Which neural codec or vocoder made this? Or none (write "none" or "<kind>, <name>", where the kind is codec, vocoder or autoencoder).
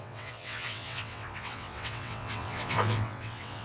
vocoder, WaveNeXt